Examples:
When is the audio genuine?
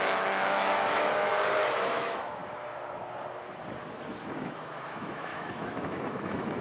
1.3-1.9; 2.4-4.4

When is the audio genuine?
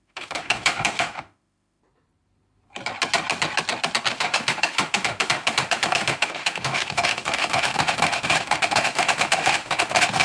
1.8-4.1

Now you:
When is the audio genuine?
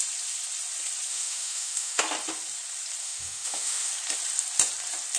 0.0-1.1; 2.0-3.0; 3.9-5.2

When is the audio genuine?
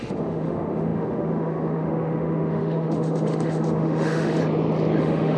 4.4-5.0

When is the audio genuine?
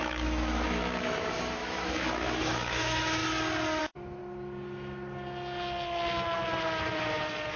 3.2-3.8; 4.2-7.6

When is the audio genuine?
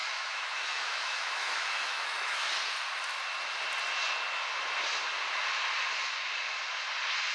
2.5-7.3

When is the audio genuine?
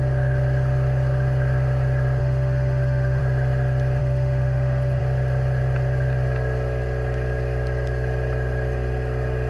0.0-2.2; 3.2-4.0; 5.0-9.5